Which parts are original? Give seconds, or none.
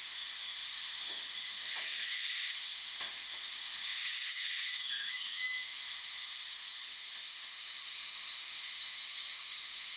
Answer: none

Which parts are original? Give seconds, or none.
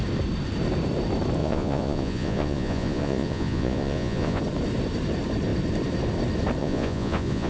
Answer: 0.0-1.4; 4.4-6.6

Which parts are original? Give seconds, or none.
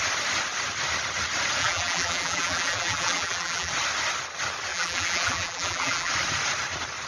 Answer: 0.0-1.6; 3.7-4.7; 6.1-7.1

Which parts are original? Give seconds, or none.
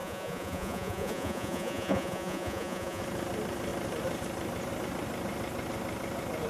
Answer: 3.0-6.5